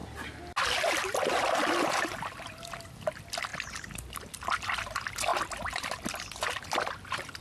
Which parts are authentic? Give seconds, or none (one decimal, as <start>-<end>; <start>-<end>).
0.0-7.4